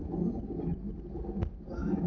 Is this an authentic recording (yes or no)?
yes